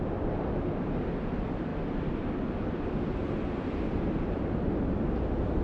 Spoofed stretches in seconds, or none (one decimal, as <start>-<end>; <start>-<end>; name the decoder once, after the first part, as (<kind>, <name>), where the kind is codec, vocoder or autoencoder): 0.0-5.6 (vocoder, BigVGAN v2)